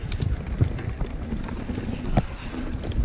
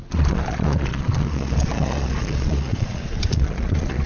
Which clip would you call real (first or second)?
first